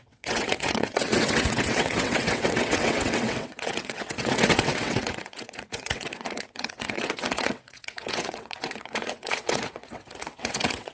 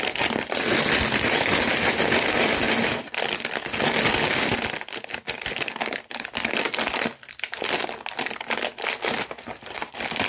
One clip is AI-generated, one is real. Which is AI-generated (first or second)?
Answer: first